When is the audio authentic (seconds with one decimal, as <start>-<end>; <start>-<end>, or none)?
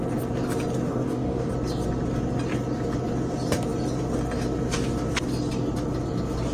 0.0-0.9; 1.5-6.5